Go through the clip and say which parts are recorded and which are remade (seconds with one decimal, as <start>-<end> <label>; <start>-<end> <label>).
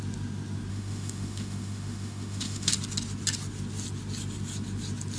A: 0.0-0.7 recorded; 0.7-2.7 remade; 2.7-5.2 recorded